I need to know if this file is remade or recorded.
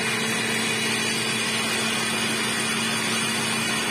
recorded